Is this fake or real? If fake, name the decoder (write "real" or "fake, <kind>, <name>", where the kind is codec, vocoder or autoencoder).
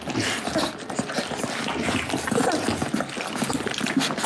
real